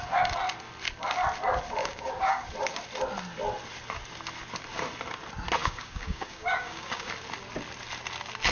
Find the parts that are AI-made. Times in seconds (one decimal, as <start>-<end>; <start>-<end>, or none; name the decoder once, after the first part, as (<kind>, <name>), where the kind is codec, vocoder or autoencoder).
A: 1.8-2.5 (codec, DAC); 5.6-7.1